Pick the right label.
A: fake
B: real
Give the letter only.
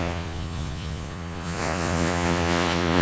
A